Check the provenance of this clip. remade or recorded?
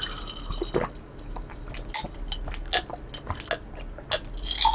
recorded